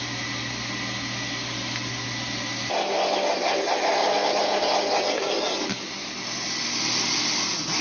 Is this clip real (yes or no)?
yes